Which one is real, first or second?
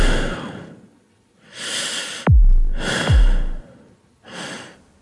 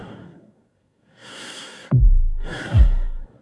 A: first